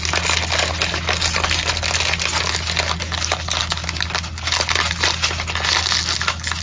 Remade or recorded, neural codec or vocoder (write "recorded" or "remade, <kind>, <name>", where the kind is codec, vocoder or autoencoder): recorded